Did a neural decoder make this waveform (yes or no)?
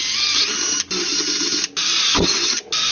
no